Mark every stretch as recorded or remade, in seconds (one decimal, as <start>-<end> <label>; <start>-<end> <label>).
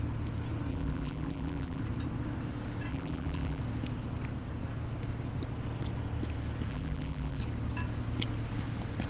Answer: 0.0-0.7 recorded; 0.7-1.8 remade; 1.8-2.9 recorded; 2.9-3.6 remade; 3.6-6.7 recorded; 6.7-7.4 remade; 7.4-9.1 recorded